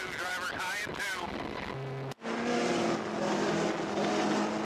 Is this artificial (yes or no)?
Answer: no